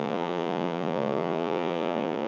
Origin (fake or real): fake